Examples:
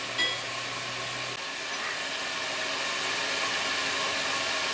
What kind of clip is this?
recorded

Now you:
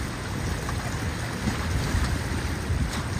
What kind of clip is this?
recorded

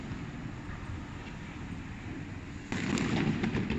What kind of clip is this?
recorded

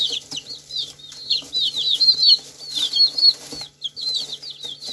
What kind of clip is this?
recorded